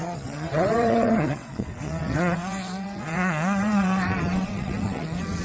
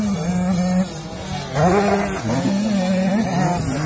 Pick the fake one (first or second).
first